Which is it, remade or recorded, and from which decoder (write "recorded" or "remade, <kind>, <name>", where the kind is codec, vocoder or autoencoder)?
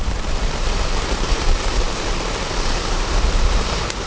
remade, vocoder, BigVGAN v2